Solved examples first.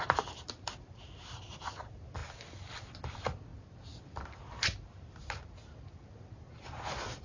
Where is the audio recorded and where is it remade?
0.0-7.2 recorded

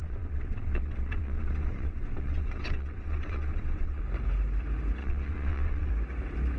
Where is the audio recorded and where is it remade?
0.0-4.0 remade; 4.0-5.0 recorded; 5.0-5.9 remade; 5.9-6.6 recorded

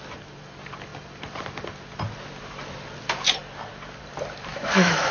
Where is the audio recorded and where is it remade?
0.0-4.5 recorded; 4.5-5.1 remade

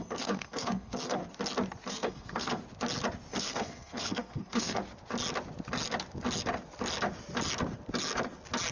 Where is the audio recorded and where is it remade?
0.0-1.2 remade; 1.2-1.9 recorded; 1.9-2.6 remade; 2.6-3.3 recorded; 3.3-4.8 remade; 4.8-8.7 recorded